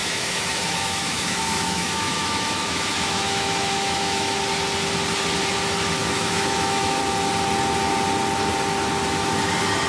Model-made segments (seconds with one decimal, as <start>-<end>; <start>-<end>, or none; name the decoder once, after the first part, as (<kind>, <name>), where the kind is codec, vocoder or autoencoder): 0.0-4.4 (autoencoder, DAC-VAE); 6.0-7.0